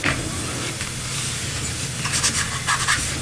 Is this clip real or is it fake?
real